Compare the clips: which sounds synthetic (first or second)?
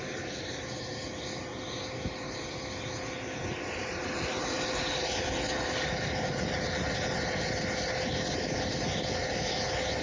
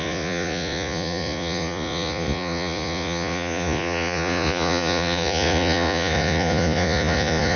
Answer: second